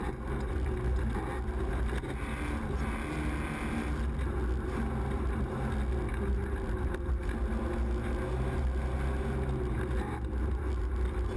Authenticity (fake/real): real